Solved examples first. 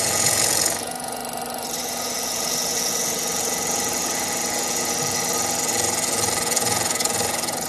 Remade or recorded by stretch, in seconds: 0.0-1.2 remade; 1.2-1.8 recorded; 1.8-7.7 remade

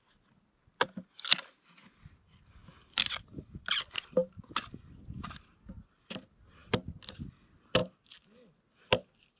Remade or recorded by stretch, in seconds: 0.0-9.4 recorded

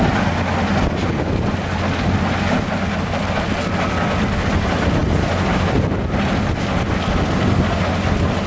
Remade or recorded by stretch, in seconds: 0.0-8.5 recorded

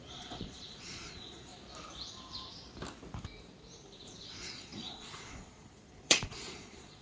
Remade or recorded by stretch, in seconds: 0.0-1.5 remade; 1.5-4.2 recorded; 4.2-7.0 remade